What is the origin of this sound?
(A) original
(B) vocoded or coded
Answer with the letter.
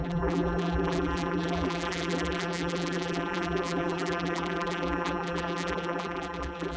B